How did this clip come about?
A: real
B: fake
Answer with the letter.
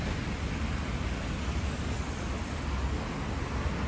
A